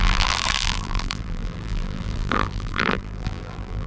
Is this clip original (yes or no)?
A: no